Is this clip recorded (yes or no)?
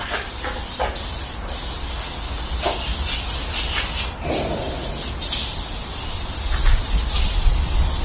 yes